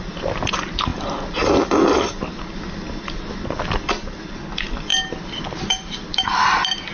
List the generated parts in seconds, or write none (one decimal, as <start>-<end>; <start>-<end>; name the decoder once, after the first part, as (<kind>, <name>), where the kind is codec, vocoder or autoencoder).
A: none